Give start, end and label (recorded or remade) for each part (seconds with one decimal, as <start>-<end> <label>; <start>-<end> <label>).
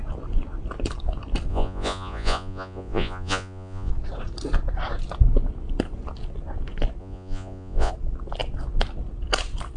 0.0-1.5 recorded; 1.5-3.9 remade; 3.9-7.0 recorded; 7.0-7.9 remade; 7.9-9.8 recorded